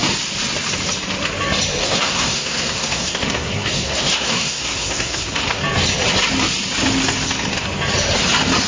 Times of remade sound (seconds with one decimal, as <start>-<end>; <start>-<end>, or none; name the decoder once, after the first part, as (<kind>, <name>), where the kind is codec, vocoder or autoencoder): 1.8-5.6 (codec, SNAC)